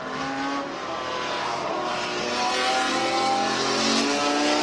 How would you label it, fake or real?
real